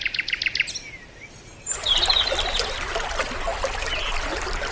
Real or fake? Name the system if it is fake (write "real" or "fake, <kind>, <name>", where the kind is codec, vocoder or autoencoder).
real